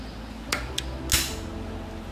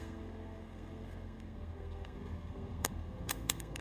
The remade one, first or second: second